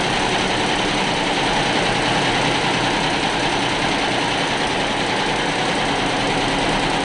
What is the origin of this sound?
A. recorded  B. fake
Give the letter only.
A